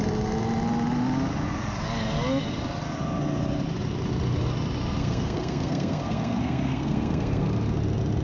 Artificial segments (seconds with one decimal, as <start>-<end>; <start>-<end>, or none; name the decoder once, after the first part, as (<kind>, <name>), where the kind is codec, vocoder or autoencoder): 5.0-7.5 (codec, SNAC)